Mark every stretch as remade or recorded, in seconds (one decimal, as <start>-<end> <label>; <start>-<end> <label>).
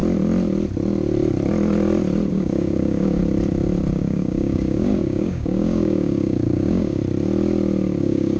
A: 0.0-2.3 recorded; 2.3-3.2 remade; 3.2-4.0 recorded; 4.0-7.0 remade; 7.0-8.0 recorded; 8.0-8.4 remade